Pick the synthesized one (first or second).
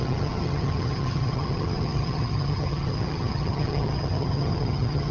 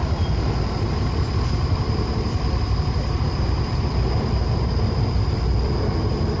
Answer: first